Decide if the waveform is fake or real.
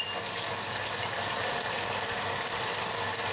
real